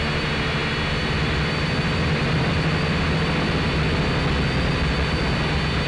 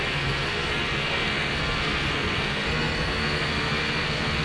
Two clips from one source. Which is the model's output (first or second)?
second